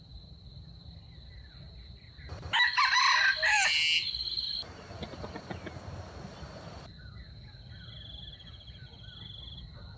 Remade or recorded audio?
recorded